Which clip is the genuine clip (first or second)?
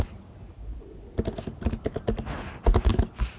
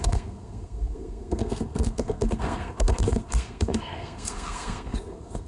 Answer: first